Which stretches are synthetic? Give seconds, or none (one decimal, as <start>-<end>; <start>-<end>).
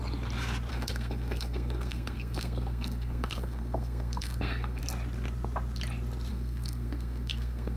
0.7-4.8; 6.3-7.8